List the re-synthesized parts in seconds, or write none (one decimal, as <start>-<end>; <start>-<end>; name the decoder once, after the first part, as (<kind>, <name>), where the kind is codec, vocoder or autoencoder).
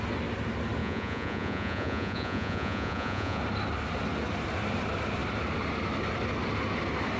0.8-3.4 (vocoder, Vocos)